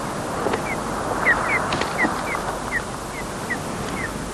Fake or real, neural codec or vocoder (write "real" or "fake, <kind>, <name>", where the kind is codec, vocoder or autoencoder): real